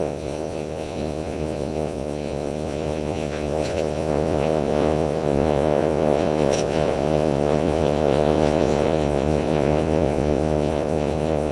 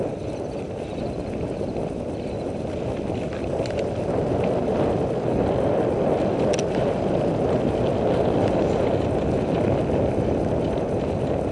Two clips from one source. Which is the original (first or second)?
second